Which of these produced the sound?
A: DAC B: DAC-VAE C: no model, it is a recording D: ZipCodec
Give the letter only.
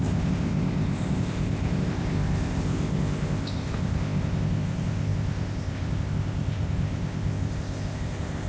D